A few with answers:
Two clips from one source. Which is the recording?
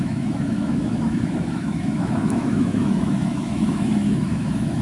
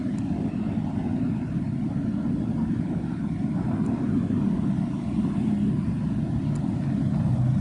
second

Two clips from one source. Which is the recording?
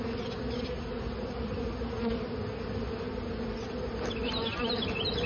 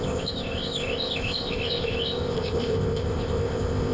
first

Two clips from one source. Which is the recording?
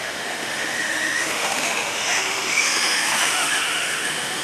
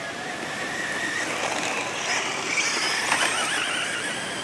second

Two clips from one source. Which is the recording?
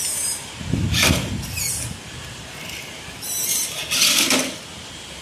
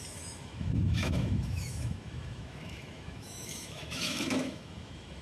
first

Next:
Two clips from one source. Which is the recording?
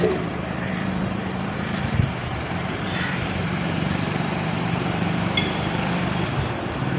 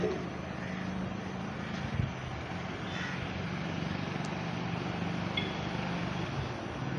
second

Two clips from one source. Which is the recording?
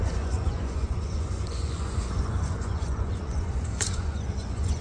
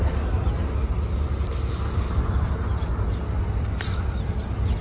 second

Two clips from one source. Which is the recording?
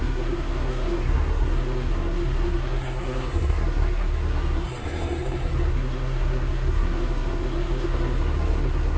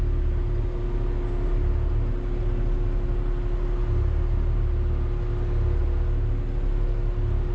second